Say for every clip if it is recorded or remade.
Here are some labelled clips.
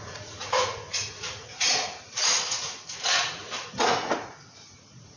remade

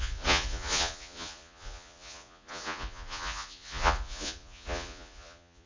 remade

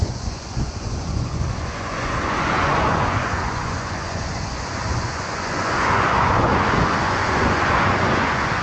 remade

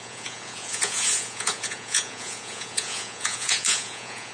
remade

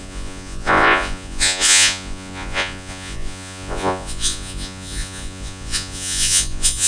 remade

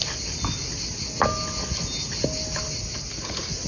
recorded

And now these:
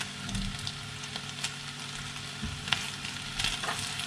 recorded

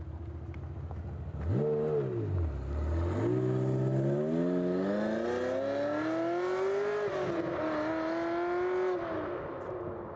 recorded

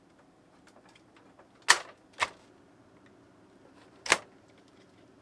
recorded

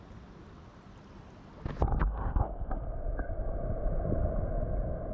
recorded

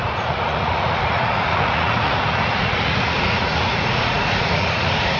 remade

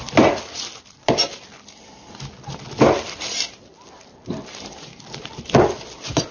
recorded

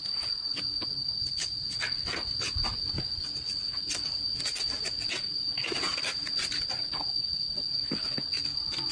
recorded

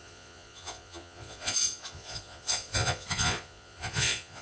remade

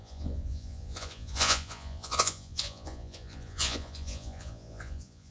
remade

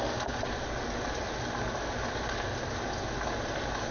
recorded